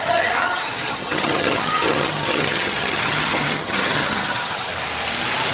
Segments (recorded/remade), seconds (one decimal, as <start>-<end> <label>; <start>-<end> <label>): 0.0-4.7 remade; 4.7-5.5 recorded